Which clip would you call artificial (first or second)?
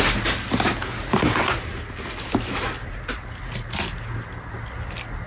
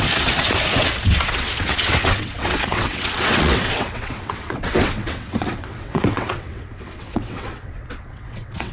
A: second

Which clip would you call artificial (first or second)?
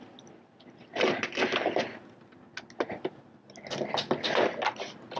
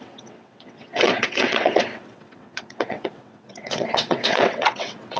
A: second